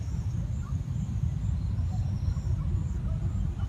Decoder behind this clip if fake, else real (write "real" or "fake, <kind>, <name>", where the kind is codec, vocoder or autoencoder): real